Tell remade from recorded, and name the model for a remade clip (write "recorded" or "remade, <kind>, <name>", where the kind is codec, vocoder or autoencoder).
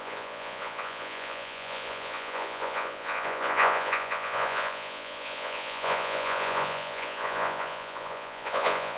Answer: remade, vocoder, Vocos